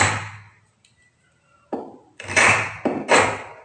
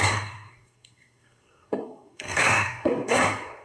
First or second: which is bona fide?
first